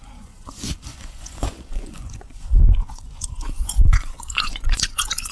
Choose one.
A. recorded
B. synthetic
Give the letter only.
B